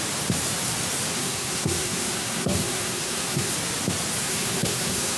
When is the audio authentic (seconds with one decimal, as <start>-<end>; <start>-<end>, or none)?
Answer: 0.0-1.1; 3.5-4.2